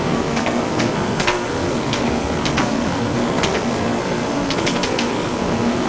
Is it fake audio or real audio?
fake